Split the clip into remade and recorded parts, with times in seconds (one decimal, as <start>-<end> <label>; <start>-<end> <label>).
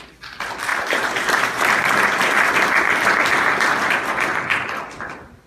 0.0-0.7 recorded; 0.7-2.5 remade; 2.5-5.5 recorded